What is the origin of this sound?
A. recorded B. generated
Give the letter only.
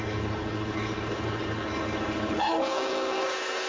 B